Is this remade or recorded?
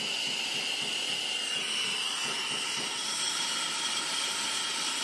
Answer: recorded